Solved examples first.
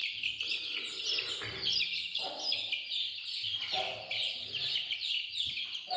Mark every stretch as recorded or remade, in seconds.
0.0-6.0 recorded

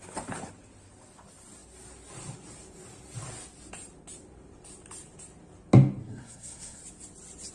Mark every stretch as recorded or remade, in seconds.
0.0-6.0 recorded; 6.0-6.8 remade; 6.8-7.5 recorded

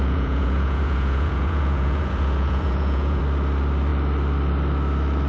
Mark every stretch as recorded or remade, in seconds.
0.0-3.2 remade; 3.2-5.3 recorded

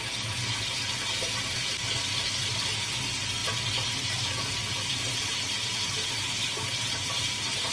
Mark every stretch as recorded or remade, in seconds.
0.0-7.7 recorded

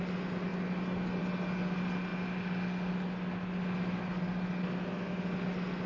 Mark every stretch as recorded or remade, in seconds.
0.0-5.9 recorded

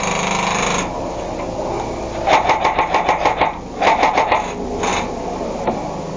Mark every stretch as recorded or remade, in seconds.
0.0-6.2 recorded

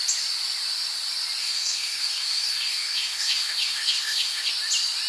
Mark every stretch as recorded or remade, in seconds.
0.0-1.4 recorded; 1.4-4.5 remade; 4.5-5.1 recorded

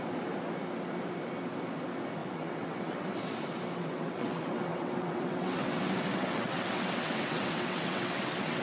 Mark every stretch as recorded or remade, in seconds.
0.0-2.2 recorded; 2.2-3.3 remade; 3.3-3.8 recorded; 3.8-8.6 remade